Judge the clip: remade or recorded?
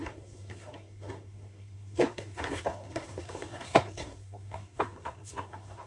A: remade